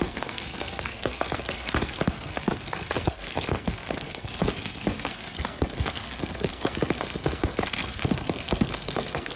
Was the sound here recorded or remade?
remade